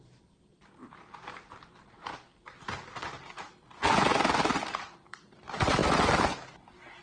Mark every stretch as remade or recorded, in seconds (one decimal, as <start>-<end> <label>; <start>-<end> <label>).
0.0-2.3 remade; 2.3-4.7 recorded; 4.7-5.8 remade; 5.8-7.0 recorded